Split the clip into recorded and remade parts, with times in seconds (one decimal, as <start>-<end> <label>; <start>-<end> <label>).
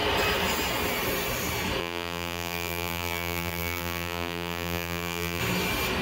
0.0-1.8 recorded; 1.8-5.4 remade; 5.4-6.0 recorded